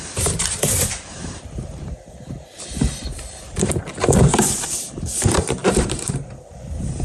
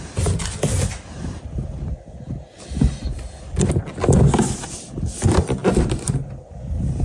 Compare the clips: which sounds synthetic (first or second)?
first